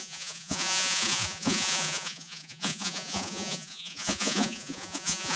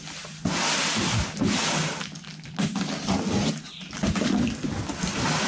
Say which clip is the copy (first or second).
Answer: first